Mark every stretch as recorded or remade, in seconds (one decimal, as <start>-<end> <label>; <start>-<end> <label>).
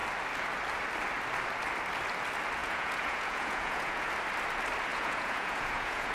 0.0-2.6 recorded; 2.6-4.1 remade; 4.1-4.9 recorded; 4.9-6.1 remade